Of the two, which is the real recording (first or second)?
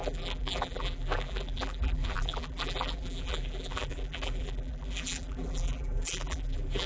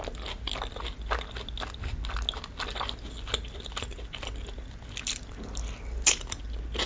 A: second